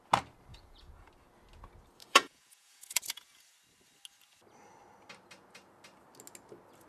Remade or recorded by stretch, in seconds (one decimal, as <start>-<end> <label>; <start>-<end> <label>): 0.0-0.5 recorded; 0.5-1.1 remade; 1.1-2.0 recorded; 2.0-3.4 remade; 3.4-6.9 recorded